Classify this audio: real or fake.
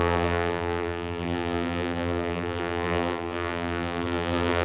fake